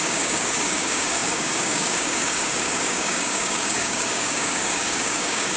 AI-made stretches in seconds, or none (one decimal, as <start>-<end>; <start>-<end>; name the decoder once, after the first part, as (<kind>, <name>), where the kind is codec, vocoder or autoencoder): 0.0-5.6 (codec, DAC)